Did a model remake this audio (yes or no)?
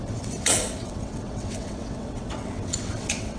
yes